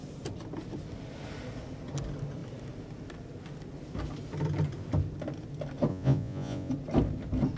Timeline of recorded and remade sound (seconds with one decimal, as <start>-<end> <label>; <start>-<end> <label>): 0.0-5.9 recorded; 5.9-6.7 remade; 6.7-7.6 recorded